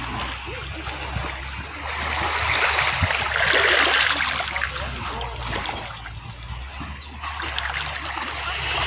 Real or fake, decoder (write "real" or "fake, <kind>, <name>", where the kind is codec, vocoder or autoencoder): real